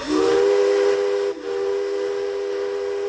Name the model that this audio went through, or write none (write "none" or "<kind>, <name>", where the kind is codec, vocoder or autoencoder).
none